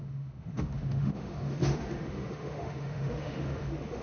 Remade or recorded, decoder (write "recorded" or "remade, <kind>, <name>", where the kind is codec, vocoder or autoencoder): remade, autoencoder, DAC-VAE